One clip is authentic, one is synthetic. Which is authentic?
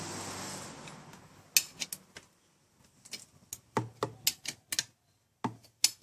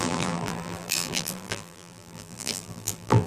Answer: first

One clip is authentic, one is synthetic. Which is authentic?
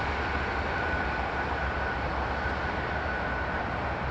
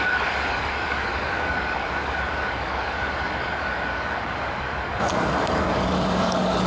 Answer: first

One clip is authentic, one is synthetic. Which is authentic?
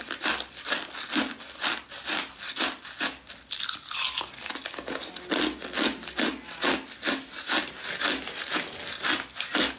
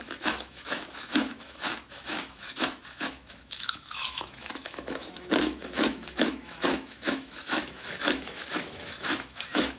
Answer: first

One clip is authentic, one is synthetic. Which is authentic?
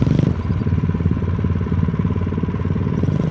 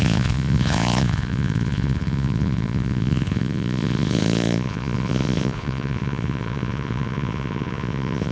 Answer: first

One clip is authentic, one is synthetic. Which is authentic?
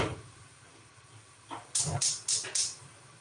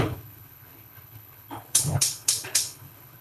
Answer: first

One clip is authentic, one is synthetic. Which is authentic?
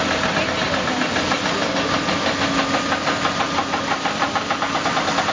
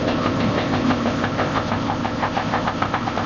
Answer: first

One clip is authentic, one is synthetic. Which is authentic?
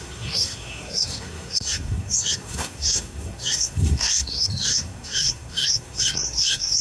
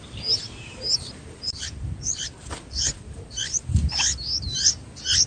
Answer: second